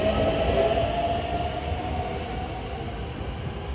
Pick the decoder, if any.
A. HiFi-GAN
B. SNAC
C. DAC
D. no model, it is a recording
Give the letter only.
D